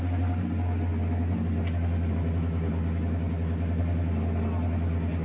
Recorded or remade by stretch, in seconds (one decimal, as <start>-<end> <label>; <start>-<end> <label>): 0.0-5.2 recorded